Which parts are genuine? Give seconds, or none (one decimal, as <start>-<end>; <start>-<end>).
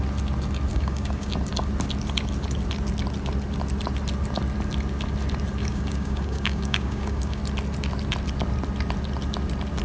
0.0-0.7; 1.3-5.6; 7.4-9.8